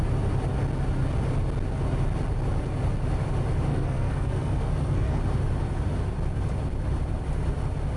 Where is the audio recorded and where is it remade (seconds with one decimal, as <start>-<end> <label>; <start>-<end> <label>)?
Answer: 0.0-3.7 recorded; 3.7-5.2 remade; 5.2-8.0 recorded